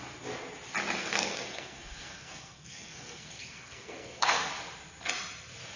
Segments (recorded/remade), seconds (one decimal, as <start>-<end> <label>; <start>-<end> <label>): 0.0-1.0 recorded; 1.0-4.5 remade; 4.5-5.8 recorded